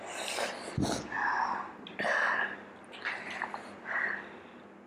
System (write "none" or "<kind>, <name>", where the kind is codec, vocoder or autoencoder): none